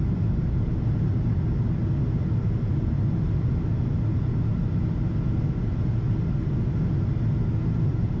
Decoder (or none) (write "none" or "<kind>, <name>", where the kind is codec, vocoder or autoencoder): none